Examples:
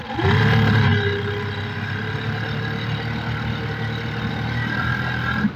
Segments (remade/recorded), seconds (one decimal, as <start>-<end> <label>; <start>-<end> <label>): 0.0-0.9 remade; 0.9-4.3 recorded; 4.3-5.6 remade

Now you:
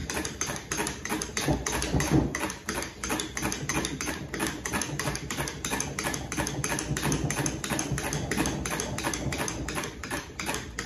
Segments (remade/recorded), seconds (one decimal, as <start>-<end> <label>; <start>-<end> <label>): 0.0-0.7 remade; 0.7-3.7 recorded; 3.7-4.2 remade; 4.2-10.9 recorded

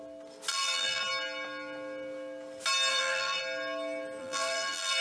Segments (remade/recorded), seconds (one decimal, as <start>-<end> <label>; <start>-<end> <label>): 0.0-0.5 recorded; 0.5-1.0 remade; 1.0-2.9 recorded; 2.9-3.4 remade; 3.4-4.2 recorded; 4.2-5.0 remade

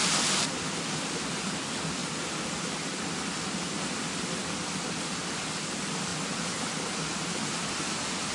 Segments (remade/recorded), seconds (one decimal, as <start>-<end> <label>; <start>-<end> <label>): 0.0-1.5 remade; 1.5-6.1 recorded; 6.1-6.7 remade; 6.7-8.3 recorded

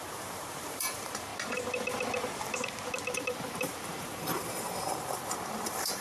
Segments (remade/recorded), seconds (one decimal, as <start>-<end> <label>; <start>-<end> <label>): 0.0-1.3 remade; 1.3-3.2 recorded; 3.2-6.0 remade